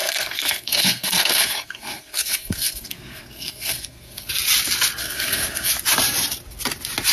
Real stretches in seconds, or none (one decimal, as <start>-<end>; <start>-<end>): 4.3-5.0; 5.7-7.1